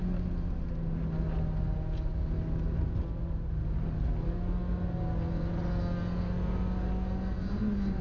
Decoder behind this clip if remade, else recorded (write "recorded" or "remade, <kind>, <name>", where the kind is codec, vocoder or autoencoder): recorded